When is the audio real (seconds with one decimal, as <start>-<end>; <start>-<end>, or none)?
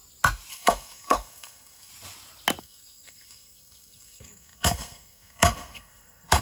0.0-0.5; 1.9-2.6